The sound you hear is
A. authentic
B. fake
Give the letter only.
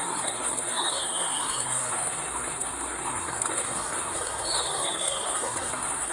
B